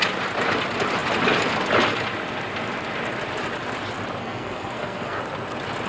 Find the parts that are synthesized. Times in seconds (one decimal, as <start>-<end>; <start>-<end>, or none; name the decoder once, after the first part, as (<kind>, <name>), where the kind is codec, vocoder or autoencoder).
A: 4.2-5.2 (codec, SNAC)